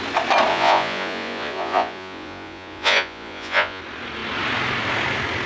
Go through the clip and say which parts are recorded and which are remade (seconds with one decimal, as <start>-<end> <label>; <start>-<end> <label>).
0.0-0.5 recorded; 0.5-3.8 remade; 3.8-5.5 recorded